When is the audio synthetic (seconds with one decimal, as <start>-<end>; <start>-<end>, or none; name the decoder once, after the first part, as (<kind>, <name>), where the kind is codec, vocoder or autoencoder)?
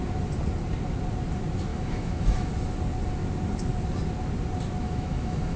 1.7-2.5 (autoencoder, DAC-VAE); 4.8-5.6